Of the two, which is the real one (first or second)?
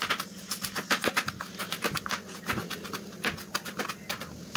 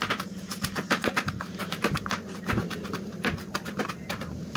first